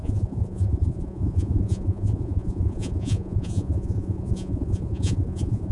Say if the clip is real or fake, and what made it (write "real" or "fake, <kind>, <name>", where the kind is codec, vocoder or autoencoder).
fake, vocoder, Vocos